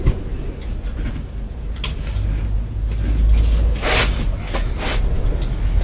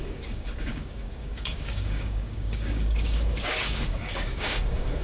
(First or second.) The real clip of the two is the first